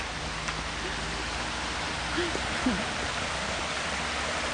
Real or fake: real